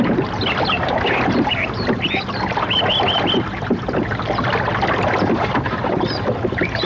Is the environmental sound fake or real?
fake